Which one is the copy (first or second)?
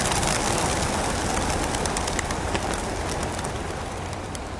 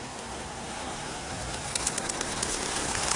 second